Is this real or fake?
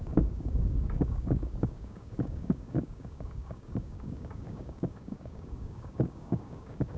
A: fake